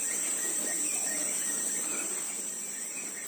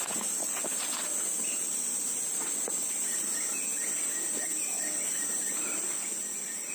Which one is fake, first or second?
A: first